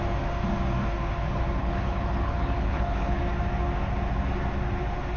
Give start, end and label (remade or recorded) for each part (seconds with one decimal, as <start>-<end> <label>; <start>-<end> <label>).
0.0-1.6 recorded; 1.6-3.2 remade; 3.2-5.2 recorded